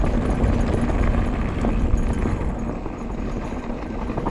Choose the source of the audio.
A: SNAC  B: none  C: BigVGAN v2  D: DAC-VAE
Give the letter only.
B